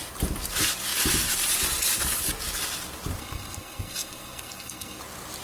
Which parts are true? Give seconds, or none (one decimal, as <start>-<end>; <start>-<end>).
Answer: 0.0-3.2; 5.0-5.4